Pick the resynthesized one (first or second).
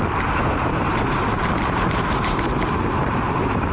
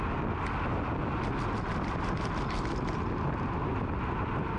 first